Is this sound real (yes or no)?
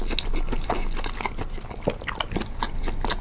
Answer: yes